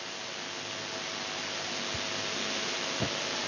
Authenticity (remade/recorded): recorded